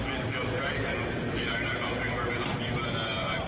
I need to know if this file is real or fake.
real